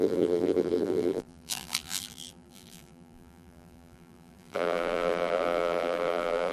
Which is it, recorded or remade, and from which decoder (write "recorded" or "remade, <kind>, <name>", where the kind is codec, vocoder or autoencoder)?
remade, vocoder, BigVGAN v2